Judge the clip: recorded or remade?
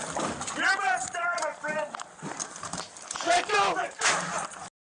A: recorded